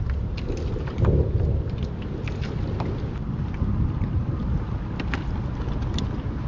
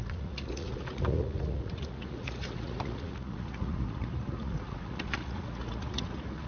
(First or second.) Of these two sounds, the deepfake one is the second